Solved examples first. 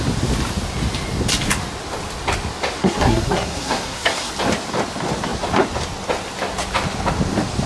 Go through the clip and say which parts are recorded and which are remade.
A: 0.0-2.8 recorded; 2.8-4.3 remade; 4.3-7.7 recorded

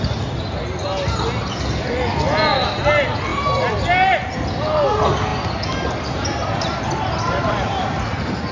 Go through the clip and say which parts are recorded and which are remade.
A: 0.0-8.5 recorded

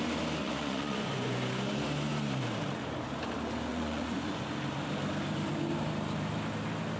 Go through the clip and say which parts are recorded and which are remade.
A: 0.0-0.4 recorded; 0.4-1.4 remade; 1.4-3.7 recorded; 3.7-4.4 remade; 4.4-7.0 recorded

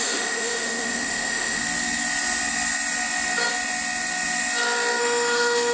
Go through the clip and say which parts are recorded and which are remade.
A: 0.0-1.6 remade; 1.6-5.0 recorded; 5.0-5.7 remade

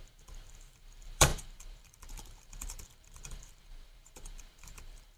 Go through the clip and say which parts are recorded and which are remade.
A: 0.0-5.2 remade

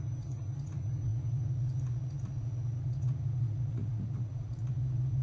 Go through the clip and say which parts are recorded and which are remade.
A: 0.0-5.2 remade

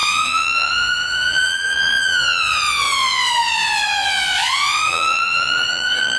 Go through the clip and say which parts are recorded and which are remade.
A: 0.0-6.2 remade